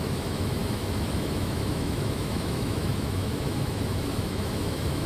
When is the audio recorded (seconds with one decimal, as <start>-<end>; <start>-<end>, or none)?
none